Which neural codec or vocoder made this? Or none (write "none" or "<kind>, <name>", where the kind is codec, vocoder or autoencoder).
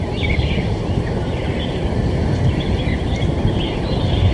vocoder, BigVGAN v2